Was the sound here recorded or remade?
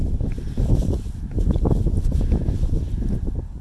recorded